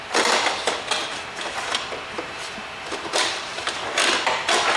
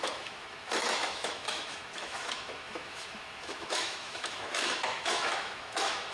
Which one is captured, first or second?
first